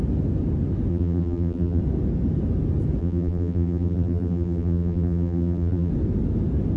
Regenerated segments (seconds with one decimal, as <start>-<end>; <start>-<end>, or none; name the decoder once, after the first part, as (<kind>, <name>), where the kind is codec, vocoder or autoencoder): 0.9-1.8 (vocoder, BigVGAN v2); 3.0-5.9